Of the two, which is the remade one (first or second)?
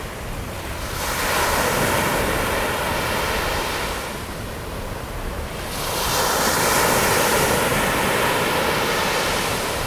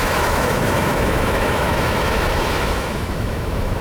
second